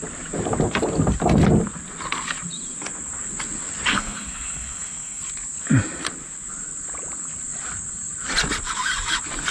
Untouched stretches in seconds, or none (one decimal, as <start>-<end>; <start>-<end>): 0.0-3.9; 5.2-9.5